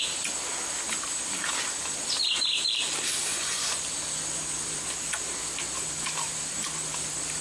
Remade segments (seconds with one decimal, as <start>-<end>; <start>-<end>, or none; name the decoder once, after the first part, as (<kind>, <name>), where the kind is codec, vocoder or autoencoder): 3.3-3.8 (vocoder, Vocos)